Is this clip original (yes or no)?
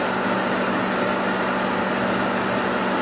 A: yes